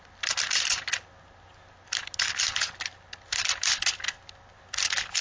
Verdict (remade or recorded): recorded